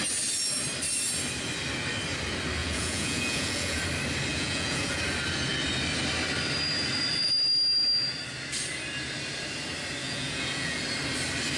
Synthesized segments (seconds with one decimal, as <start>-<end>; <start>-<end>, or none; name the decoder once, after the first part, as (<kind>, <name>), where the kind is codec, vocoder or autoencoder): 2.6-3.8 (vocoder, Vocos); 4.3-5.0; 10.0-10.8